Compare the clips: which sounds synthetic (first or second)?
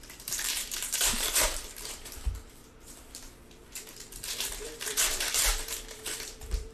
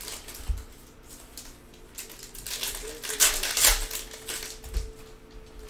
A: first